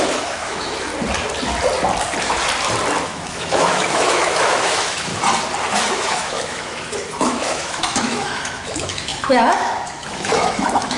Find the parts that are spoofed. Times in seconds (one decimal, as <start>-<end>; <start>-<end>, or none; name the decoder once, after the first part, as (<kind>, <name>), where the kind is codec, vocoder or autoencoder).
0.0-0.9 (autoencoder, DAC-VAE); 3.0-5.1; 5.7-11.0